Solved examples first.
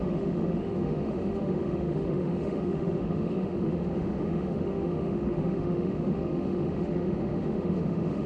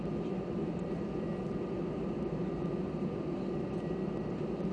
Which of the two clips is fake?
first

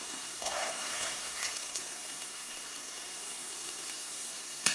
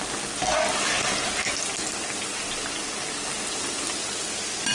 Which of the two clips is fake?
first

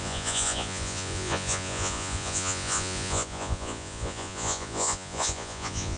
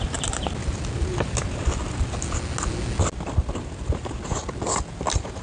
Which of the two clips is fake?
first